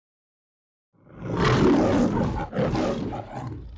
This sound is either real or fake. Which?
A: real